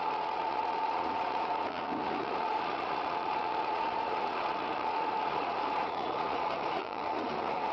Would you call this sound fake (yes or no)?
yes